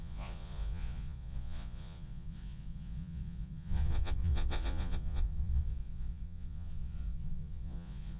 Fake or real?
fake